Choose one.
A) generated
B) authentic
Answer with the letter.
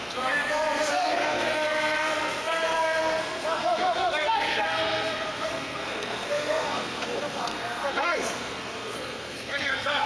A